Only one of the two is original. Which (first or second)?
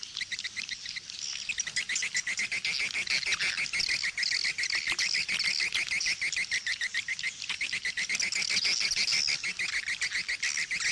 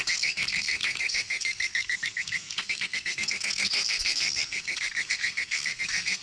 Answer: first